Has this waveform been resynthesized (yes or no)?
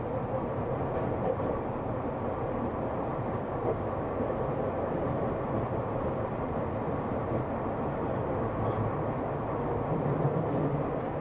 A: no